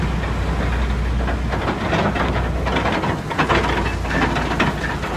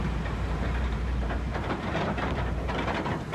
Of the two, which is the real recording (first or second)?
first